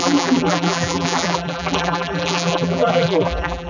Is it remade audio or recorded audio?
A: remade